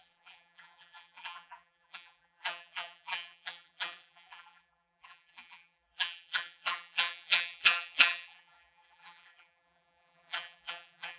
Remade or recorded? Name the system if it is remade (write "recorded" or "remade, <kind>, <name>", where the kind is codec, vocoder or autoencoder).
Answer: remade, vocoder, BigVGAN v2